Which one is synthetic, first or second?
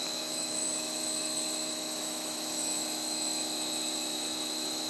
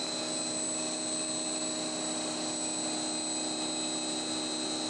first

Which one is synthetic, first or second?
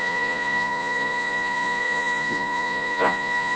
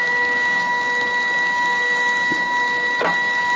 first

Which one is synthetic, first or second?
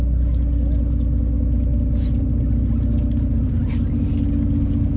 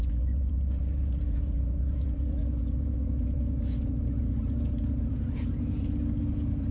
second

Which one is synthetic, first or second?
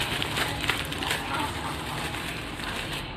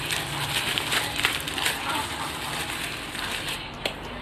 first